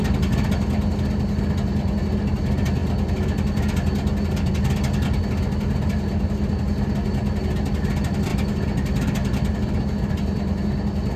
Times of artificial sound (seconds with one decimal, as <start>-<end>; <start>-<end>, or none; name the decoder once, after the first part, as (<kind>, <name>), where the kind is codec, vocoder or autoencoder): none